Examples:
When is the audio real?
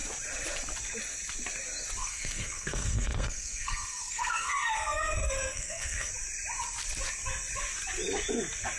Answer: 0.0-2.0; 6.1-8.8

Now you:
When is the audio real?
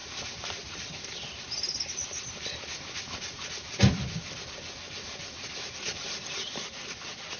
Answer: 0.0-7.4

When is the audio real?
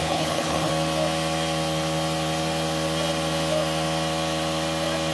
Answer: 0.7-5.1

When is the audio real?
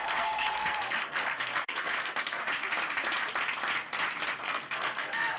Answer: 2.4-4.4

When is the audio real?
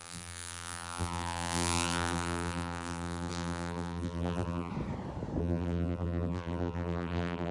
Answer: 4.7-5.4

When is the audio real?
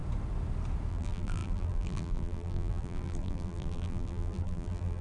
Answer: 0.0-0.9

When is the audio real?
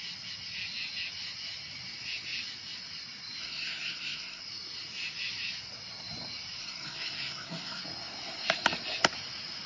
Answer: 0.0-3.4; 4.4-6.6; 7.8-9.7